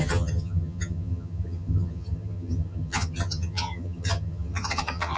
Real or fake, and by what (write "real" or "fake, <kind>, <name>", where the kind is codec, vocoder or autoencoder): fake, vocoder, HiFi-GAN